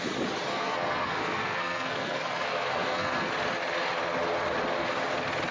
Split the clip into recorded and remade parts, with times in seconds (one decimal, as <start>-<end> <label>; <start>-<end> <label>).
0.0-0.5 recorded; 0.5-3.3 remade; 3.3-5.5 recorded

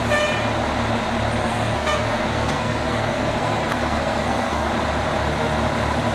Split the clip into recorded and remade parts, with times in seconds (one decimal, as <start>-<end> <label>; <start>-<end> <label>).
0.0-1.4 recorded; 1.4-4.7 remade; 4.7-6.1 recorded

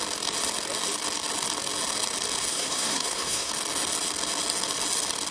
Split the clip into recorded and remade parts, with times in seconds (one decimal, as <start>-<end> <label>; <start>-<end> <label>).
0.0-2.5 recorded; 2.5-3.5 remade; 3.5-5.3 recorded

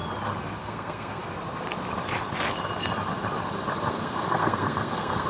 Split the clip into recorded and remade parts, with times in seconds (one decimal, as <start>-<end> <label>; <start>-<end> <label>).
0.0-0.6 recorded; 0.6-1.2 remade; 1.2-3.9 recorded; 3.9-5.3 remade

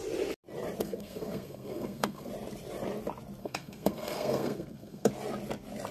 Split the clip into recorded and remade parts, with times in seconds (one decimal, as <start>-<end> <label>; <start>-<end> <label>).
0.0-0.8 recorded; 0.8-2.3 remade; 2.3-3.4 recorded; 3.4-5.1 remade; 5.1-5.9 recorded

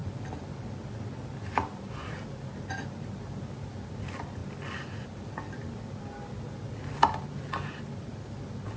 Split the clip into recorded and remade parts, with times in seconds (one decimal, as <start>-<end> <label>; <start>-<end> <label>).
0.0-8.8 recorded